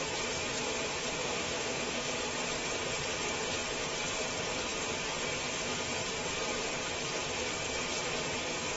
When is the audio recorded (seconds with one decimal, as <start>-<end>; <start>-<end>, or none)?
0.0-1.2; 2.1-8.8